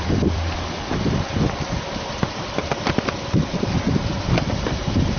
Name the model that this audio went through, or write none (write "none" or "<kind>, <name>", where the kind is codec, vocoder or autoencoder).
vocoder, BigVGAN v2